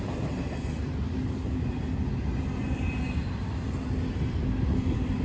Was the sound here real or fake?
real